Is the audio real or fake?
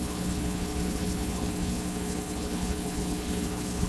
fake